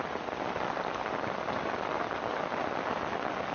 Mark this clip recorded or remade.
recorded